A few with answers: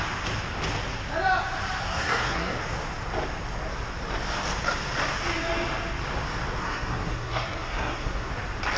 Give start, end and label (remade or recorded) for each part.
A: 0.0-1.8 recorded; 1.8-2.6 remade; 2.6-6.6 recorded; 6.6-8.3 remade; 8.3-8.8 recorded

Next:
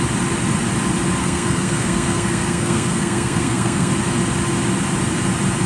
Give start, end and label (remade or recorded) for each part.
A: 0.0-1.2 recorded; 1.2-3.9 remade; 3.9-5.7 recorded

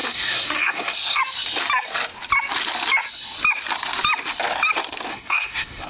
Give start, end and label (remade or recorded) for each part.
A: 0.0-1.2 remade; 1.2-5.1 recorded; 5.1-5.9 remade

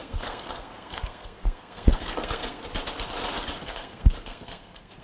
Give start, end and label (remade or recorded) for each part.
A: 0.0-2.6 remade; 2.6-3.6 recorded; 3.6-5.0 remade